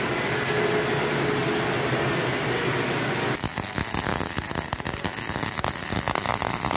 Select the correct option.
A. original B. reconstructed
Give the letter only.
A